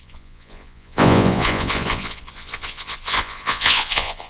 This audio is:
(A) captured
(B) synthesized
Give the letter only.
B